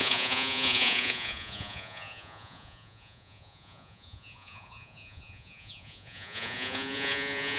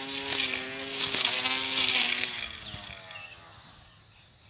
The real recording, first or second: second